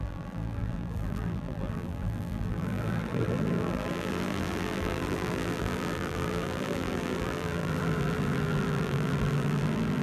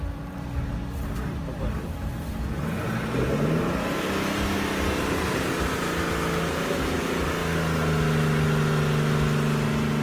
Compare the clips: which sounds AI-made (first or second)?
first